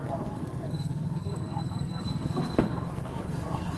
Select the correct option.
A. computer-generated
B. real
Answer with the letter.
A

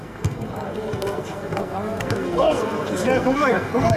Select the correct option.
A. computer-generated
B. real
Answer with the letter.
A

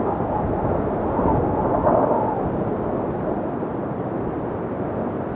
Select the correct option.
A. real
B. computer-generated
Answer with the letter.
A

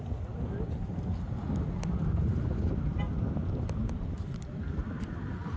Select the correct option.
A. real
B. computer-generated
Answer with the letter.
A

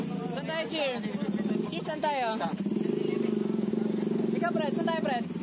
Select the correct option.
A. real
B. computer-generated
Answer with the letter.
A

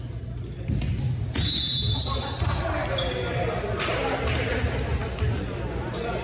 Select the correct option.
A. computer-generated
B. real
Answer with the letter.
B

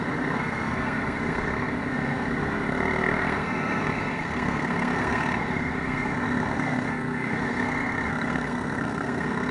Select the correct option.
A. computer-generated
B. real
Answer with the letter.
A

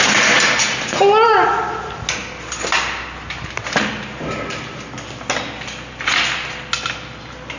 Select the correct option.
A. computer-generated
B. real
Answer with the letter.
B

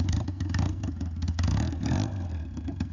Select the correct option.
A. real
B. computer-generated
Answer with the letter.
B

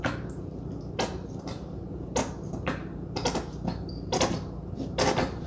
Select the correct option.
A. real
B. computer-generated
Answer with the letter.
A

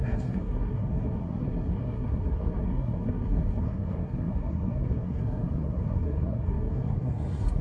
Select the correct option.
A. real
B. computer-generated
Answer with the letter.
B